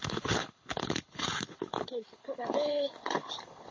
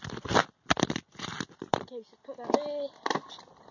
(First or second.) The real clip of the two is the second